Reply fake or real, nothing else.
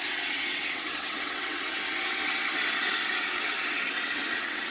fake